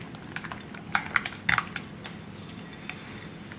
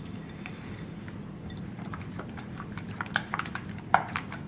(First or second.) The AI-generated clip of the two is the second